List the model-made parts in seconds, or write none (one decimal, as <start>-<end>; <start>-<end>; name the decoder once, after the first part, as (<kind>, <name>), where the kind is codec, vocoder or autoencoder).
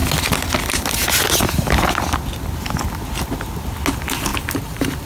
4.3-5.1 (vocoder, BigVGAN v2)